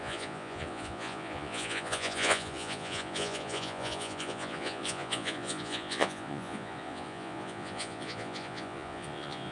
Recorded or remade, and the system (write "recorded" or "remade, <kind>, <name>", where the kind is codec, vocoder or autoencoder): remade, vocoder, Vocos